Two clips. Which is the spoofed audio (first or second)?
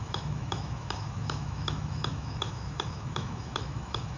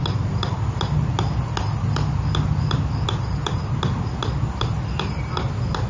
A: first